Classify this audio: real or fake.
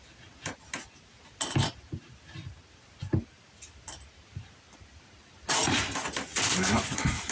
real